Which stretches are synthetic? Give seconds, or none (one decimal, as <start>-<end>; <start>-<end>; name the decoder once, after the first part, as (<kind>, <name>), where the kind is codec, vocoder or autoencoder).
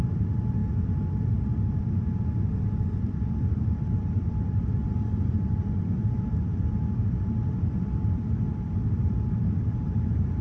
0.0-0.6 (vocoder, BigVGAN v2); 2.8-4.8; 5.3-10.4